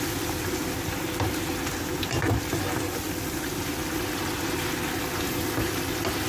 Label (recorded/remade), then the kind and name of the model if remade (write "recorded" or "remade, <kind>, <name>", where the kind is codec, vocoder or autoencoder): recorded